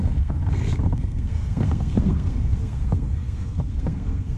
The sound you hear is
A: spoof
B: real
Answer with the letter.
A